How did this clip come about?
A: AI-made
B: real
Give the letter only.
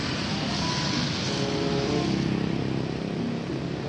B